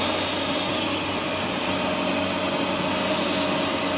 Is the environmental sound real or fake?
real